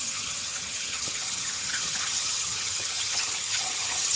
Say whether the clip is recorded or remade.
remade